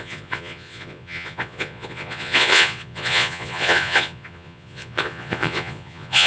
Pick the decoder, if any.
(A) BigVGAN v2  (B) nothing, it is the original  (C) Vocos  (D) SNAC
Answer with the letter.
C